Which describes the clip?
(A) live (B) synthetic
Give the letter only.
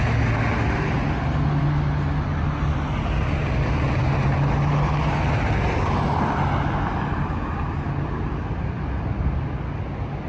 A